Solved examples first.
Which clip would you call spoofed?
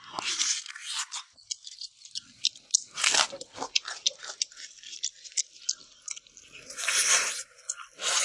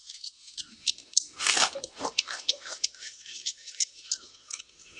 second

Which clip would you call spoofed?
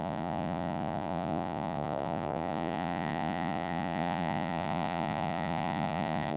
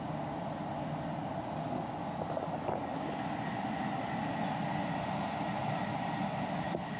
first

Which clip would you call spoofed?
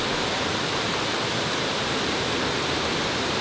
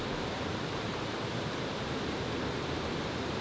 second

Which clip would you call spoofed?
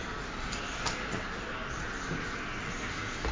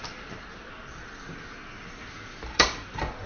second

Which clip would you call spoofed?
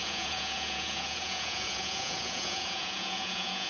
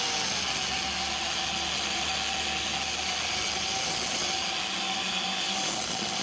first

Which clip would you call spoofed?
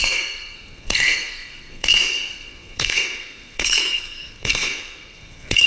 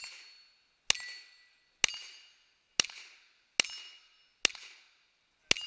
first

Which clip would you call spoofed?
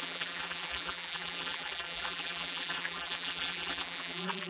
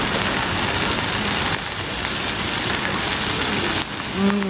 first